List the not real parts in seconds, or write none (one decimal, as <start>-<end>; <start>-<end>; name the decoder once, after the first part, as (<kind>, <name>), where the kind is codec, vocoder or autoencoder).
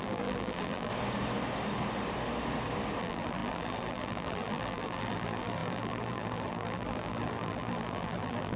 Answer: 0.0-0.9 (vocoder, BigVGAN v2); 3.0-8.6